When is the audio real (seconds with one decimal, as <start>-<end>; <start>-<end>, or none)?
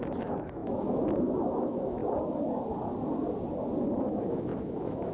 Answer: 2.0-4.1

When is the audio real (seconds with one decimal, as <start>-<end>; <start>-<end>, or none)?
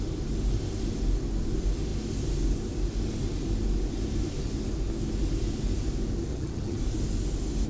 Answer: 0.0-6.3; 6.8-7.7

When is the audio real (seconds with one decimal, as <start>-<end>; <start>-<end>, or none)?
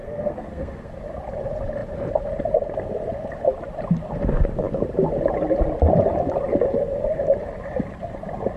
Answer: 0.9-8.6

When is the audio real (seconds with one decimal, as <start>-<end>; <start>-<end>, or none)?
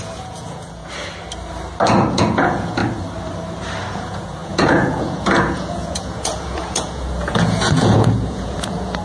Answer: 0.8-2.1; 2.8-3.9